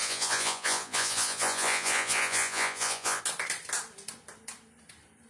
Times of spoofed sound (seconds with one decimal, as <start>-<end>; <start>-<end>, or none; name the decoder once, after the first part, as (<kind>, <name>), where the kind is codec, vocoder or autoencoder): 0.0-3.2 (vocoder, Vocos)